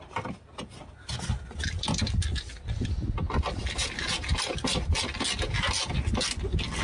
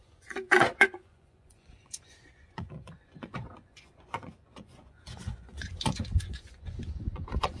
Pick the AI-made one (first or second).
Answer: second